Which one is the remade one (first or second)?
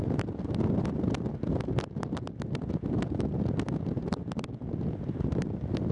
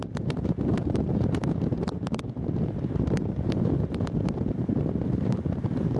second